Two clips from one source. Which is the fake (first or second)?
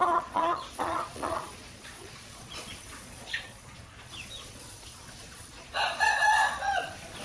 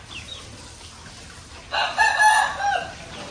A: first